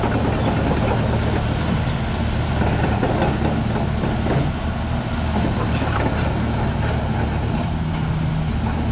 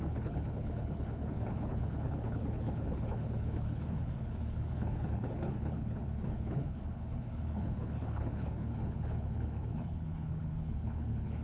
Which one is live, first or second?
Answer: first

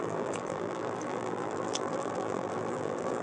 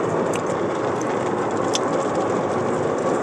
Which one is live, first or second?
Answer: second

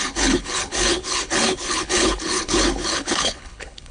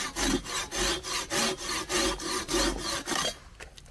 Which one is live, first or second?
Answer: second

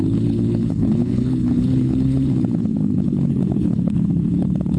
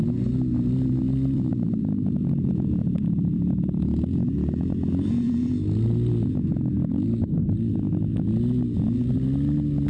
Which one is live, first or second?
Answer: second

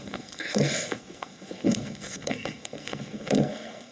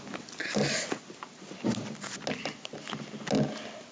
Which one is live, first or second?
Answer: second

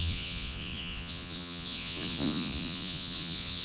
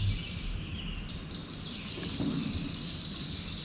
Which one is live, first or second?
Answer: second